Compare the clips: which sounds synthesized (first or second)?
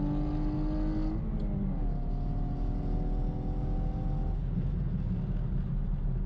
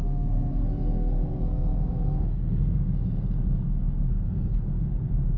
second